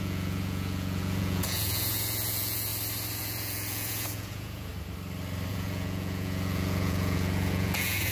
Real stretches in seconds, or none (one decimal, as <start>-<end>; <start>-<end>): 2.7-3.2; 4.7-5.5